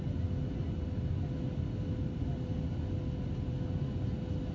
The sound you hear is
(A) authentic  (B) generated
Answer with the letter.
A